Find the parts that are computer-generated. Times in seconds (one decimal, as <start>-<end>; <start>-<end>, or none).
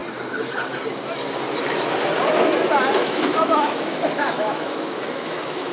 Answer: 3.0-5.7